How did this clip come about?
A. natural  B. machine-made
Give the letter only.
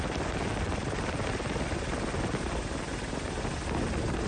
A